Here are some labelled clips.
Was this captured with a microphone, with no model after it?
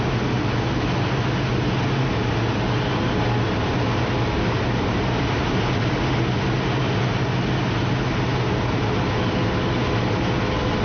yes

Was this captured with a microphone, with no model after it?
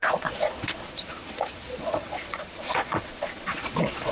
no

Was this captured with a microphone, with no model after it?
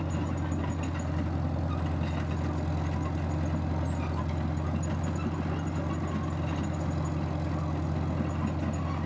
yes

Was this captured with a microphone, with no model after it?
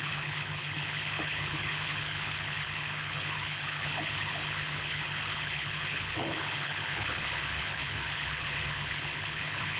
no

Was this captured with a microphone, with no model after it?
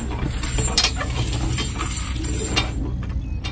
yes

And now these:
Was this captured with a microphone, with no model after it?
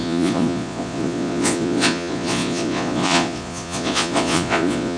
no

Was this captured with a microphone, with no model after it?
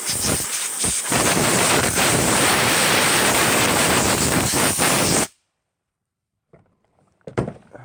no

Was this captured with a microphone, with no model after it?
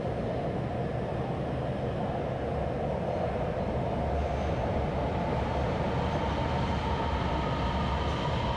yes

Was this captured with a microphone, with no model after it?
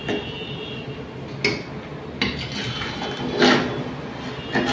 yes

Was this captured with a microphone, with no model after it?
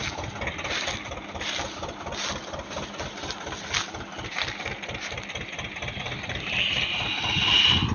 yes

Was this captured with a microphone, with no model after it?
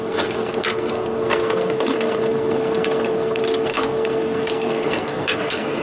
no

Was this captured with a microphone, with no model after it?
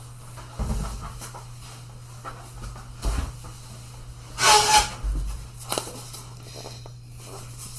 yes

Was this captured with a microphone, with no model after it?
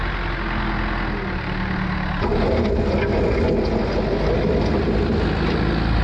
yes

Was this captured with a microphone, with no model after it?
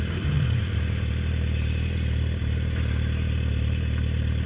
no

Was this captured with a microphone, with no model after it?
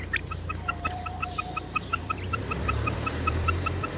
no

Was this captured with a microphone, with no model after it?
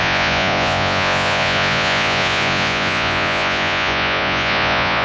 no